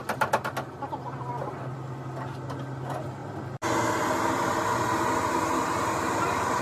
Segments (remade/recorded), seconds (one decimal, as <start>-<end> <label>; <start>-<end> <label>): 0.0-6.6 recorded